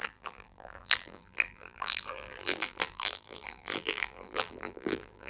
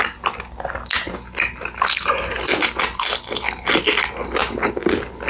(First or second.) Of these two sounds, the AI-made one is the first